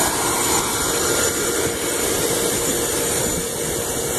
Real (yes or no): yes